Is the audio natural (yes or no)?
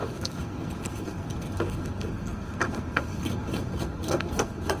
no